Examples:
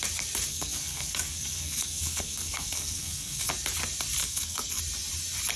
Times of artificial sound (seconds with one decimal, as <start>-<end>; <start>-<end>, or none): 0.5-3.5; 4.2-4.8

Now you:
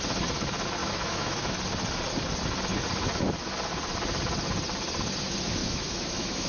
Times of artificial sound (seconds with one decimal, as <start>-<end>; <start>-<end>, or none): 0.8-1.5; 5.6-6.5

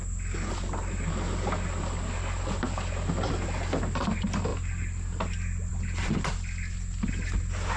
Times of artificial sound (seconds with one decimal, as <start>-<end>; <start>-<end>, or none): none